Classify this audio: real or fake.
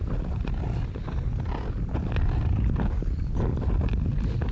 real